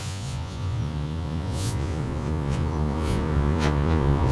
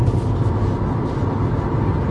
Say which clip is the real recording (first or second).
second